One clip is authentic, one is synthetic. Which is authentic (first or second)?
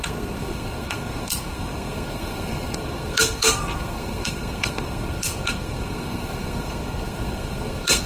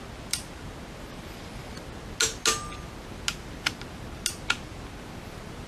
second